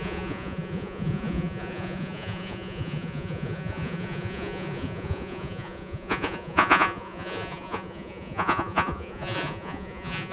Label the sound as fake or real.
fake